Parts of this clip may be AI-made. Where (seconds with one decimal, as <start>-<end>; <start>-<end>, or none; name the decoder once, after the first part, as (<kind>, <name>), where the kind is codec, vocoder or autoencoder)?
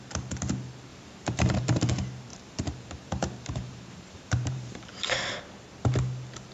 0.9-1.9 (vocoder, BigVGAN v2); 2.3-5.4